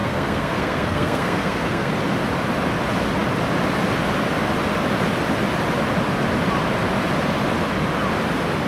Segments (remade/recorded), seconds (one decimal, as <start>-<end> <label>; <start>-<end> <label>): 0.0-1.9 remade; 1.9-8.7 recorded